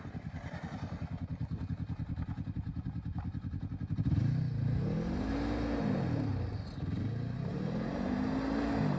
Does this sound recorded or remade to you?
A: recorded